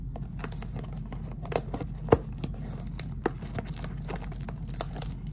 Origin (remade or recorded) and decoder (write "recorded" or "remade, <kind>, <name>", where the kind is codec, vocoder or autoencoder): recorded